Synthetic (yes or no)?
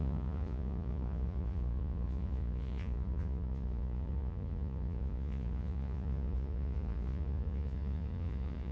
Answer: yes